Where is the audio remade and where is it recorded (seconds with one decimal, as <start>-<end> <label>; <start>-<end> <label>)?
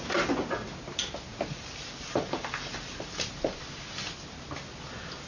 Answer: 0.0-5.3 recorded